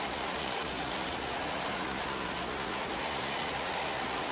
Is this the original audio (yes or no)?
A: no